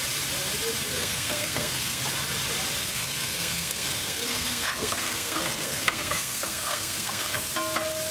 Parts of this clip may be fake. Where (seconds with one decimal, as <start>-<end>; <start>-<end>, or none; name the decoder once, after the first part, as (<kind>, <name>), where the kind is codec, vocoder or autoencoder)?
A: 0.9-2.0 (codec, SNAC); 2.8-7.5